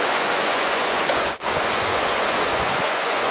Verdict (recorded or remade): remade